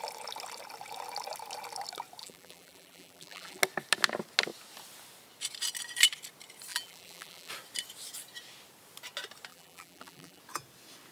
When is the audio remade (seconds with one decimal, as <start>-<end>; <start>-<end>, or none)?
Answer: 2.2-3.6; 6.7-7.5; 9.5-10.4